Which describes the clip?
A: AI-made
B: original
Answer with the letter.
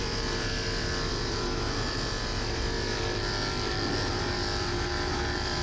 A